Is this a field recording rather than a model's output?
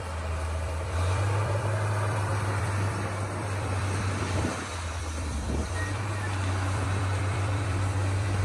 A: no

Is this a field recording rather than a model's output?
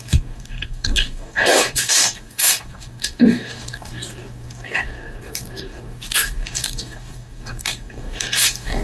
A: no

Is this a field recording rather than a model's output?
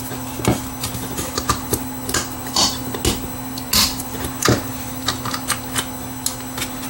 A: yes